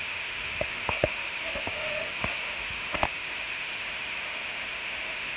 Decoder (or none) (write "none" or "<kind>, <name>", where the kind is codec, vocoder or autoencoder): autoencoder, DAC-VAE